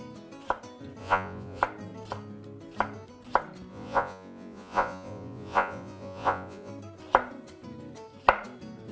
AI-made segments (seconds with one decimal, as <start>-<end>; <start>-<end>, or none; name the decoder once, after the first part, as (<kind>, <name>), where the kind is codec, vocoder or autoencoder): 1.0-1.6 (vocoder, Vocos); 3.7-6.7